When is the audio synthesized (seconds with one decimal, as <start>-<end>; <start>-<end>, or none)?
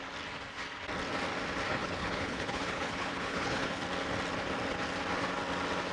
1.7-3.8